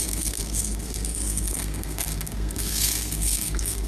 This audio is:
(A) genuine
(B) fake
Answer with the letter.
B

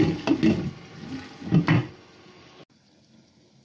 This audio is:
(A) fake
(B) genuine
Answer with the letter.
B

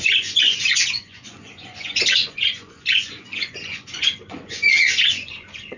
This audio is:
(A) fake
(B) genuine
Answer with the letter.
A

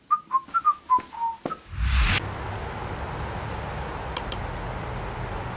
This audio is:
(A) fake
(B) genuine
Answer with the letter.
B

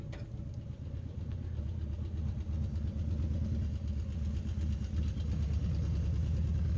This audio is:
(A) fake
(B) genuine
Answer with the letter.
B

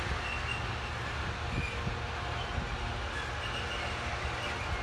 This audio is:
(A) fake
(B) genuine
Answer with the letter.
B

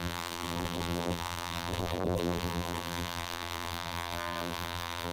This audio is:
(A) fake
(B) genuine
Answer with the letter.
A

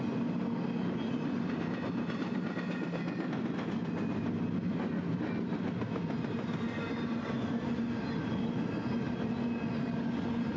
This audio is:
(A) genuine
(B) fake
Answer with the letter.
A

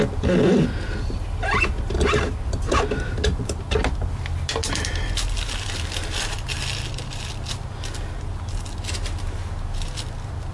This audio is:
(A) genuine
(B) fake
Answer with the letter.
A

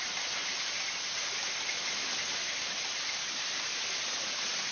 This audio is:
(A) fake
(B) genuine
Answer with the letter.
B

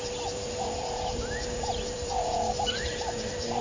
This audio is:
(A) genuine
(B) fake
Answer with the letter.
B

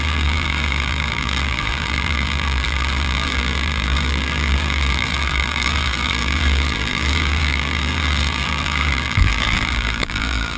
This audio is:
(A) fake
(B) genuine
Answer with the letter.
A